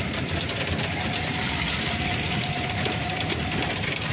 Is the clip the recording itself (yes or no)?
yes